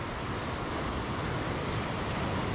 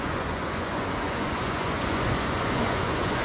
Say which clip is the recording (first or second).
first